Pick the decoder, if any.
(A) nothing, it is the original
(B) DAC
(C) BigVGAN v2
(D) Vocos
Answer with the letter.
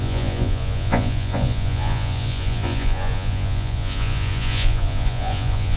D